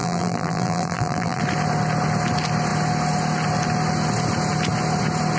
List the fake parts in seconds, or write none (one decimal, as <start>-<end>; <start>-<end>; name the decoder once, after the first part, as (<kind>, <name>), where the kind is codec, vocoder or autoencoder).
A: 0.0-1.4 (vocoder, BigVGAN v2)